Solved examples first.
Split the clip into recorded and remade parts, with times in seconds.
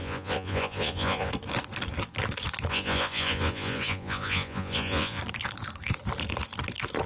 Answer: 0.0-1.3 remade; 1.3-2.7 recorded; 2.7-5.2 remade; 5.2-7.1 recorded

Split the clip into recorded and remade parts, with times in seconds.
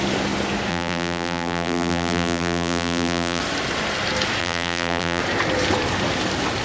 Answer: 0.0-0.7 recorded; 0.7-3.4 remade; 3.4-4.4 recorded; 4.4-5.2 remade; 5.2-6.6 recorded